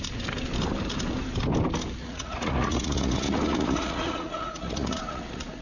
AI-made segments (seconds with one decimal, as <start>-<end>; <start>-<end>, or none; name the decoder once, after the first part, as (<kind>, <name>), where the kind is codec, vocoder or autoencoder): 2.0-5.6 (vocoder, Vocos)

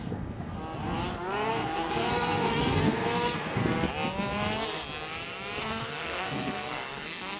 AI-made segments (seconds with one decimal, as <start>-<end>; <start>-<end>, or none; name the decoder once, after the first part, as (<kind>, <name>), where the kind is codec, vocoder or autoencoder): 0.0-0.6 (codec, SNAC); 1.5-3.6; 5.6-7.4

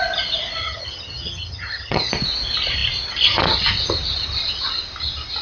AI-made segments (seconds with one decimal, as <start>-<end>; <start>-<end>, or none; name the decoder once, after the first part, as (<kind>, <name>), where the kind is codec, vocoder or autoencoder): 0.6-2.1 (vocoder, HiFi-GAN)

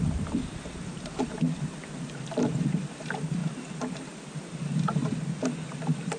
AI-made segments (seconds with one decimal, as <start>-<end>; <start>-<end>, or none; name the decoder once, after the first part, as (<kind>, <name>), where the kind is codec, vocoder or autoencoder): 0.0-6.2 (vocoder, BigVGAN v2)

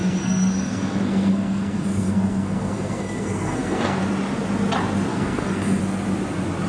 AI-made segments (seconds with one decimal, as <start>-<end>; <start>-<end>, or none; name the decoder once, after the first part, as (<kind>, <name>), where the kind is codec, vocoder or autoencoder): 0.0-4.0 (codec, SNAC); 5.1-5.8

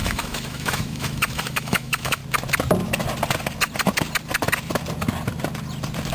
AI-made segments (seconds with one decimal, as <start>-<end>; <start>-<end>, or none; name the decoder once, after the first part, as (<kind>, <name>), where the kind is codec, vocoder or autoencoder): 0.0-2.2 (autoencoder, DAC-VAE)

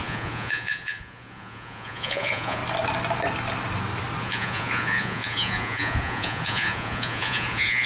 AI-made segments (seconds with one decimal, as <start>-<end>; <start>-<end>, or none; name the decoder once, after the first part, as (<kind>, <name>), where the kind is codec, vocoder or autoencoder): 0.0-2.6 (vocoder, Vocos); 4.2-7.9